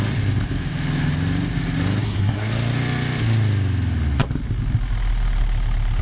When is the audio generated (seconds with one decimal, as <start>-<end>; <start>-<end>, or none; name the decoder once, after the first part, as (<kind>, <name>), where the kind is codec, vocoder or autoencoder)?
2.0-2.5 (codec, SNAC)